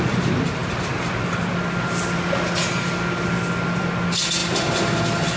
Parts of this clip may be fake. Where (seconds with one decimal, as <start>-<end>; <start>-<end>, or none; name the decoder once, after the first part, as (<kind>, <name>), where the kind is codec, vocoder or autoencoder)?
none